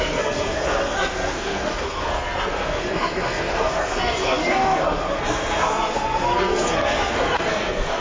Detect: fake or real fake